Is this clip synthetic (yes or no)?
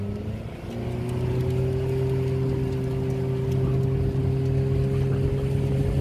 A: no